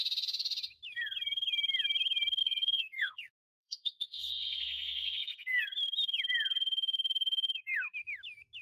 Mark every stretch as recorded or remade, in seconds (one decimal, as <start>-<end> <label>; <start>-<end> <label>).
0.0-2.4 recorded; 2.4-5.6 remade; 5.6-8.6 recorded